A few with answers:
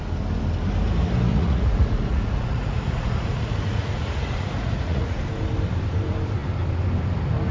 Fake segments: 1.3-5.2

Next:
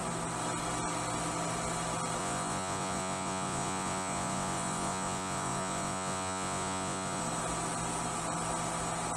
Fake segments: 2.2-7.2

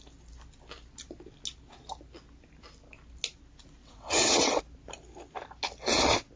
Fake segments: 3.8-4.6